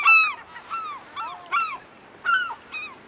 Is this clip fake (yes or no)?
no